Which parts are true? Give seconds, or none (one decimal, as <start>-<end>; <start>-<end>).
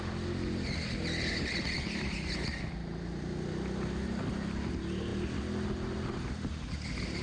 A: 0.0-7.2